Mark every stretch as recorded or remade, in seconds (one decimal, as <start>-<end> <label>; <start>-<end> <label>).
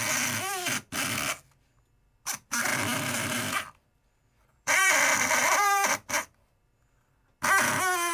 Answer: 0.0-2.7 recorded; 2.7-6.6 remade; 6.6-8.1 recorded